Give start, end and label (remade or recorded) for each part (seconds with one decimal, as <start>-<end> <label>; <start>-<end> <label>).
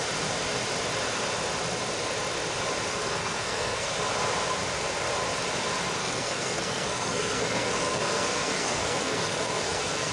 0.0-2.9 recorded; 2.9-3.9 remade; 3.9-6.0 recorded; 6.0-10.1 remade